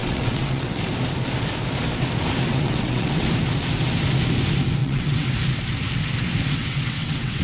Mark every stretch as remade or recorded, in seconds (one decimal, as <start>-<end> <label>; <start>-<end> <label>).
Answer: 0.0-0.8 remade; 0.8-2.5 recorded; 2.5-3.3 remade; 3.3-4.8 recorded; 4.8-5.3 remade; 5.3-6.6 recorded; 6.6-7.4 remade